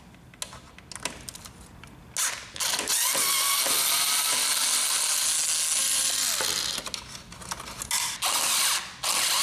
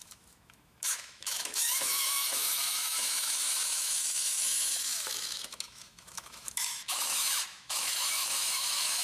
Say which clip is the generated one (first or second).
second